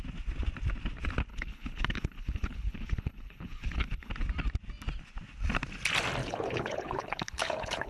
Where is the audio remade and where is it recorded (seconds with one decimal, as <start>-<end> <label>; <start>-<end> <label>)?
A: 0.0-1.3 recorded; 1.3-4.1 remade; 4.1-6.2 recorded; 6.2-7.9 remade